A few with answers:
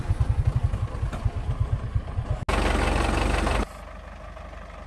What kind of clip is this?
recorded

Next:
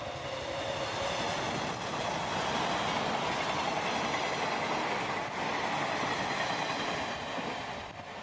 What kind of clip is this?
recorded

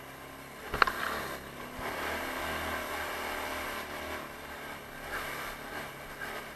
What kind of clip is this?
recorded